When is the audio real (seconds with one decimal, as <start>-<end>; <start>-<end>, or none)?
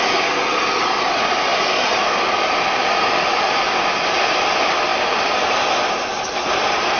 0.0-7.0